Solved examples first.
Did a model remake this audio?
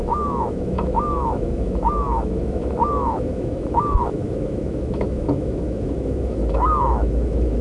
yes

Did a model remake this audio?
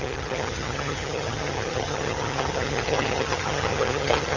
yes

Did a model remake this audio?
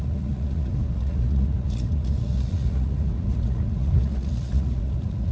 yes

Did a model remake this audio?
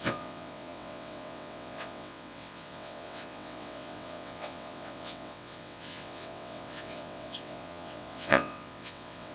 yes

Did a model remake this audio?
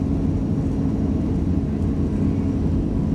no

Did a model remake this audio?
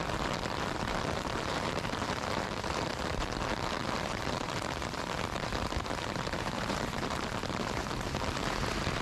yes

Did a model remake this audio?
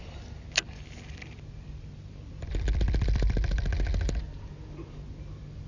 no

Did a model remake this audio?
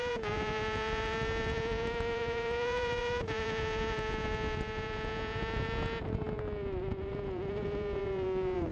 yes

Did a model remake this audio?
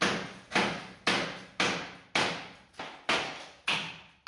no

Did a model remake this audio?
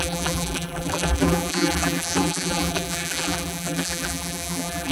yes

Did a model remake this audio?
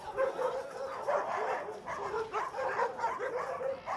yes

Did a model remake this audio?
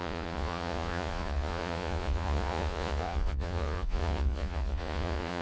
yes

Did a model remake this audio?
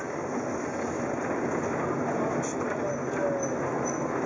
no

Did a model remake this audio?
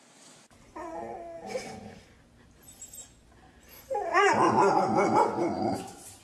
no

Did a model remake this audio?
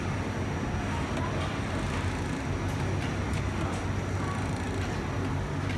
no